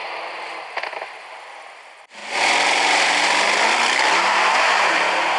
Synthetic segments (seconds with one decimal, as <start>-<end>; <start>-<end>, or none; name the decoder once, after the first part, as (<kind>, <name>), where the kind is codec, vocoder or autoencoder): none